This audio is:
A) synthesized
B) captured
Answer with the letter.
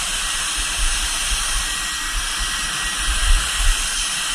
A